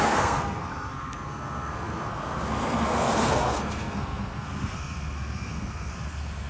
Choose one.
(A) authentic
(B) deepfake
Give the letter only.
B